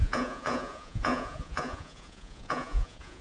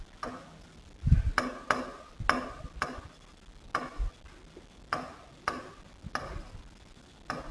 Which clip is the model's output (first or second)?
first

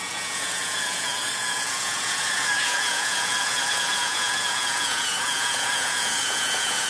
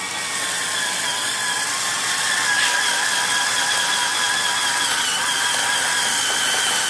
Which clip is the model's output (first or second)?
first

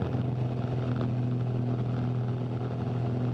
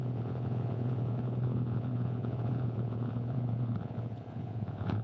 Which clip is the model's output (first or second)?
second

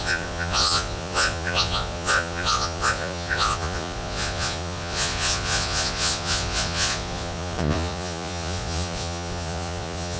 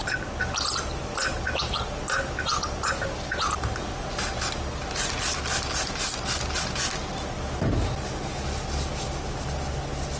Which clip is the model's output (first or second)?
first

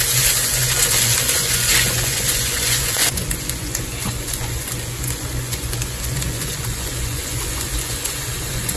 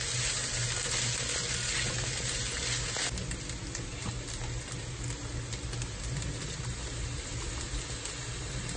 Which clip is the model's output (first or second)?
first